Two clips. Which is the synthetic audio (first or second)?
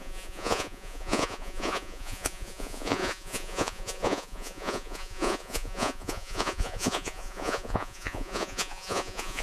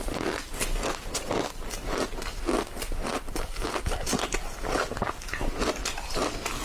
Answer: first